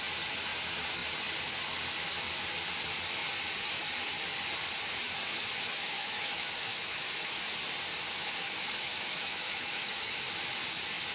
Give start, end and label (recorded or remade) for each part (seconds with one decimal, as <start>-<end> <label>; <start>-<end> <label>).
0.0-5.3 recorded; 5.3-7.5 remade; 7.5-8.4 recorded; 8.4-10.2 remade; 10.2-11.1 recorded